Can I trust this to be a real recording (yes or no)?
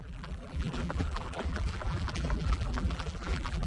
no